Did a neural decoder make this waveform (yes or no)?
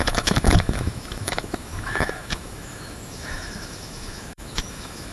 yes